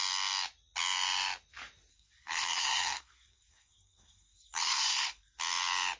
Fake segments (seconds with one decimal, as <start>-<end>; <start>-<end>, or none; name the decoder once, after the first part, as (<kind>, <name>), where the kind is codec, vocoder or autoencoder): 1.9-5.4 (codec, SNAC)